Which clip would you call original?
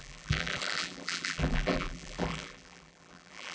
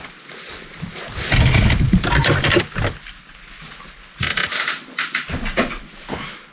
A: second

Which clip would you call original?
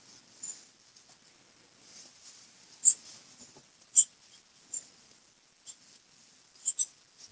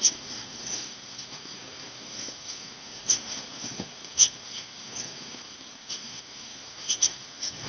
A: first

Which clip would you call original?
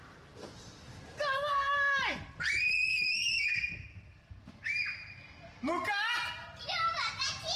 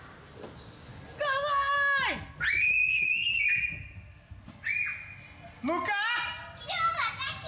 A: second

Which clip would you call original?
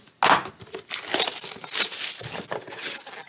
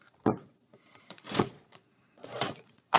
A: first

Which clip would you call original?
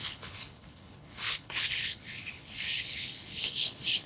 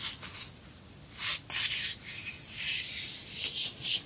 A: second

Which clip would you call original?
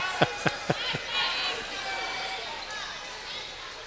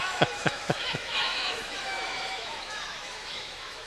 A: first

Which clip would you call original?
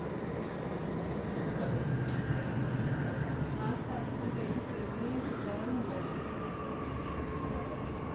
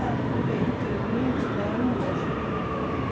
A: first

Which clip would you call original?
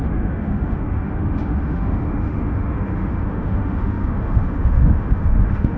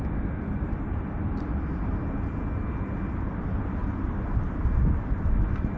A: second